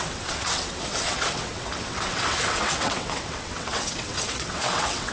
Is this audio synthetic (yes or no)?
yes